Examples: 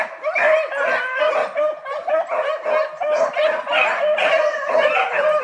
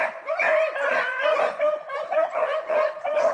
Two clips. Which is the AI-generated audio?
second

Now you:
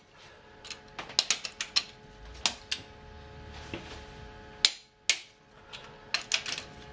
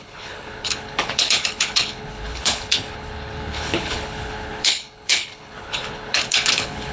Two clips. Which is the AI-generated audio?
second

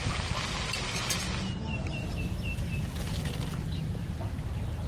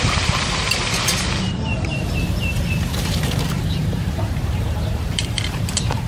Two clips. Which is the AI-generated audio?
second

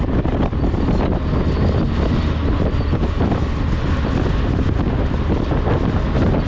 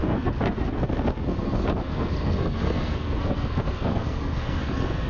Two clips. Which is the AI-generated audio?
second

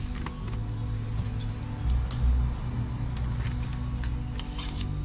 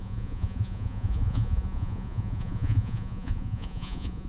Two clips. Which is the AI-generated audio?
second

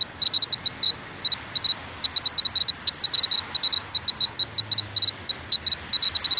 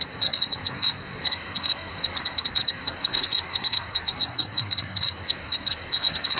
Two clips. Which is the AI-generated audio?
second